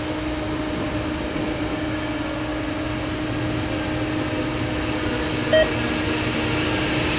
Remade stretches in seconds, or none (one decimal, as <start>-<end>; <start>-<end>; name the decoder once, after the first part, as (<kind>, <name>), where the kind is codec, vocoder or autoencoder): none